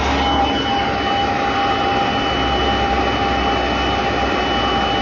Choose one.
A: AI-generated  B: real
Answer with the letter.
B